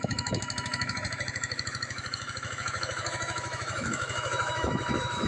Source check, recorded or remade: remade